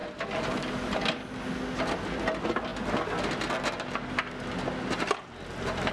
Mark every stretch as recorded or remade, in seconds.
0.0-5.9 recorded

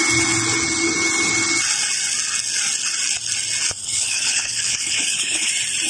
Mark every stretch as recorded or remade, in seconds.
0.0-3.8 recorded; 3.8-5.5 remade; 5.5-5.9 recorded

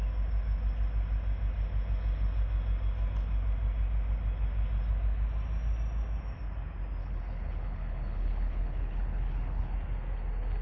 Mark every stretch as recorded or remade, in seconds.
0.0-7.0 recorded; 7.0-9.7 remade; 9.7-10.6 recorded

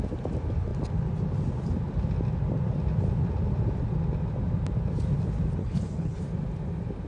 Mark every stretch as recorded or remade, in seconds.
0.0-5.6 recorded; 5.6-6.2 remade; 6.2-7.1 recorded